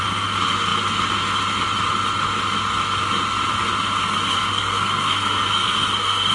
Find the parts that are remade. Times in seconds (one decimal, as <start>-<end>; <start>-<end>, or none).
4.5-6.3